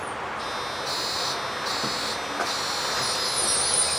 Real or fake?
real